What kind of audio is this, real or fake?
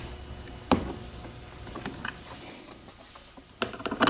real